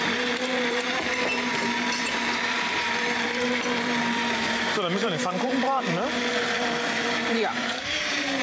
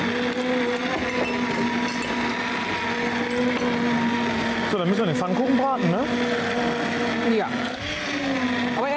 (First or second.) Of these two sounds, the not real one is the first